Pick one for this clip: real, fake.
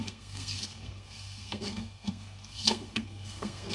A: fake